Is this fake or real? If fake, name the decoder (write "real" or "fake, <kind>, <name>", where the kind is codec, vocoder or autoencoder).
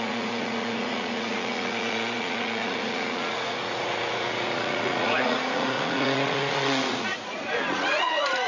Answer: fake, vocoder, Vocos